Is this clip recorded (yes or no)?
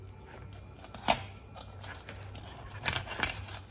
yes